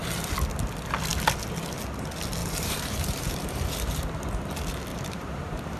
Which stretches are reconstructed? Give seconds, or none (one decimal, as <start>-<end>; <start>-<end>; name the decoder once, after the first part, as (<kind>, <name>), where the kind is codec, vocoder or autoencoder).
2.4-4.0 (vocoder, BigVGAN v2); 4.9-5.8